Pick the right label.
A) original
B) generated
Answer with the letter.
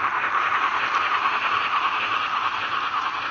B